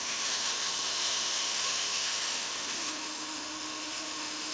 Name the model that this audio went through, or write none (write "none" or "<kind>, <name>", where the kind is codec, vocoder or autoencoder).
autoencoder, DAC-VAE